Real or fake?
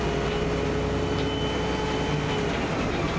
real